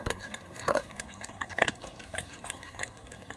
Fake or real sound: fake